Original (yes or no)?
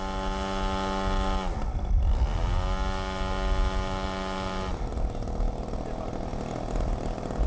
yes